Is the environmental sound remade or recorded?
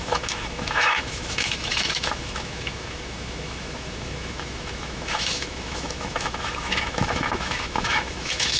remade